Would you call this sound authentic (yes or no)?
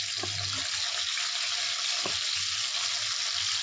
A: yes